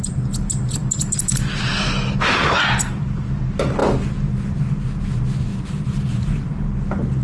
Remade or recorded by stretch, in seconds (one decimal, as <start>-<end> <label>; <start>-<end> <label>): 0.0-5.5 recorded; 5.5-6.6 remade; 6.6-7.2 recorded